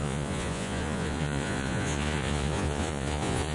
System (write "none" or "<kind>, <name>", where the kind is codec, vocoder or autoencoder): vocoder, Vocos